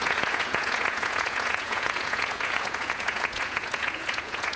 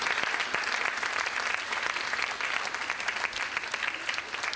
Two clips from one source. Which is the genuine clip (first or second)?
second